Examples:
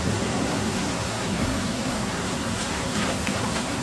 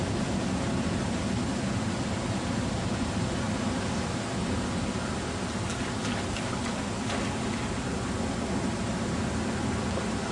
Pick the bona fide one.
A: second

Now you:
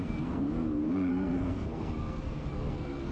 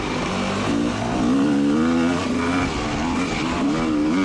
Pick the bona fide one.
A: second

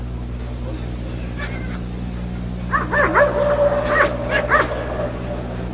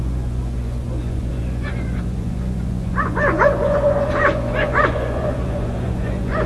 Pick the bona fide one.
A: first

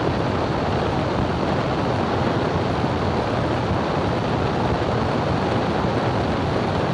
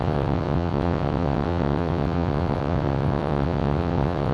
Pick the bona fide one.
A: first